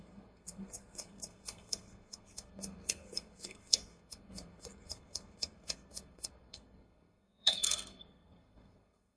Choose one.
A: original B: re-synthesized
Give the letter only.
B